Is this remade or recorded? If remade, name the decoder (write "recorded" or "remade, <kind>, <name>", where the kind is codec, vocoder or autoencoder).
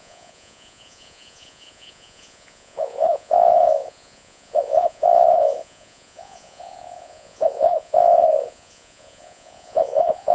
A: remade, vocoder, Vocos